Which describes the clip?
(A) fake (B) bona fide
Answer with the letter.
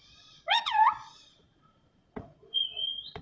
A